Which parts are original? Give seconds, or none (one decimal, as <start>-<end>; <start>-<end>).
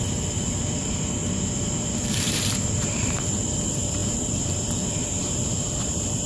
none